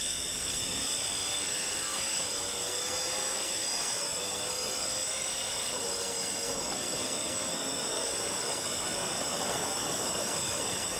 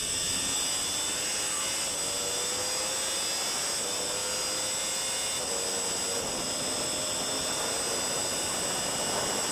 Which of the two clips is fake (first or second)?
first